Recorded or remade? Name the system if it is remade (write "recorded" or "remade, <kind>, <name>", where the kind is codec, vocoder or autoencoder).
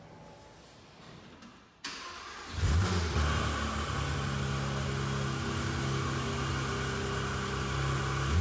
recorded